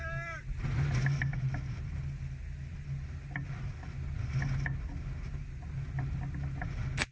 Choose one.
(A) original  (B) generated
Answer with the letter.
A